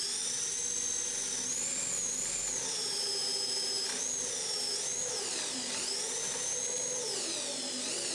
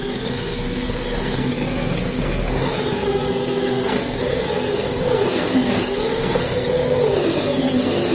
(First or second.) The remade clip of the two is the second